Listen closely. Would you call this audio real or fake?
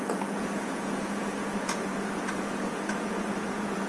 fake